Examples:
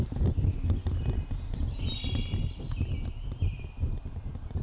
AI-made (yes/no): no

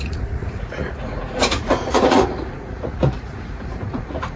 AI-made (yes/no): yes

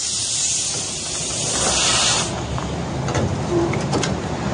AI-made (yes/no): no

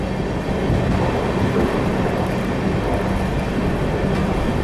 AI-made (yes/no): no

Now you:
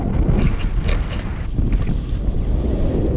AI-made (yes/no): no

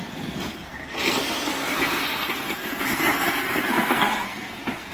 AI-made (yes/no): yes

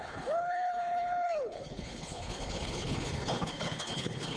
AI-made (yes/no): yes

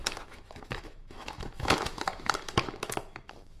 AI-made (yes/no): yes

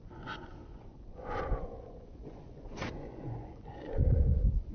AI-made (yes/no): yes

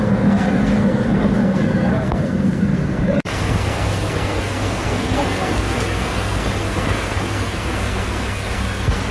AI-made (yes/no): yes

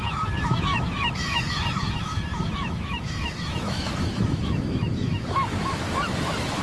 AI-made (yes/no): yes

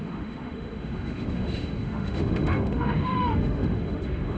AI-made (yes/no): yes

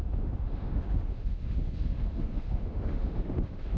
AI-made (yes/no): yes